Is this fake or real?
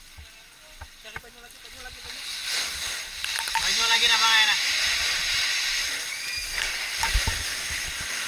real